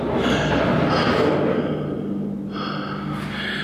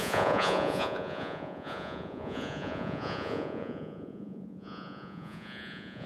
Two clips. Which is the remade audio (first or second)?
second